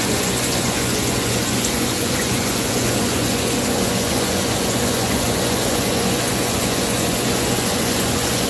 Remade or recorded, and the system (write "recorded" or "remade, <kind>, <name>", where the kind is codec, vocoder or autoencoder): remade, vocoder, Vocos